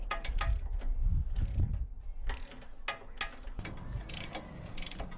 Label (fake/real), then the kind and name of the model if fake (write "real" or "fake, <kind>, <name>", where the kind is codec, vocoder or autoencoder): real